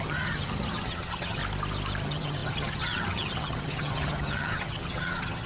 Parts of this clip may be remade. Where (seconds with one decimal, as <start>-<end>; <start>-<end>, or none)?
0.0-1.4; 2.0-5.5